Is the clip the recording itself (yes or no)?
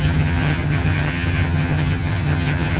no